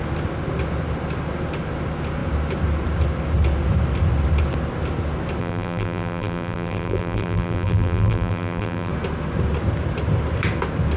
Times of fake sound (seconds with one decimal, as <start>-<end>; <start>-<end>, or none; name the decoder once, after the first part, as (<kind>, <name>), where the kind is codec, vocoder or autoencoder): 5.4-8.9 (vocoder, BigVGAN v2)